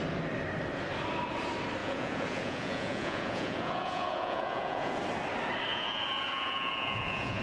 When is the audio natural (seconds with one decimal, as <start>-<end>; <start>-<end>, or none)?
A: 0.0-1.8; 5.0-5.7